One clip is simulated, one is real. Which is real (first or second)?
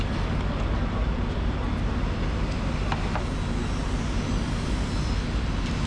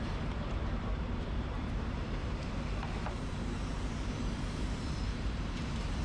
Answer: first